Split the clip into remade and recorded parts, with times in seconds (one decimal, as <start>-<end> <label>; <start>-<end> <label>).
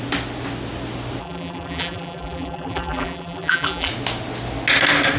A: 0.0-1.2 recorded; 1.2-3.9 remade; 3.9-5.2 recorded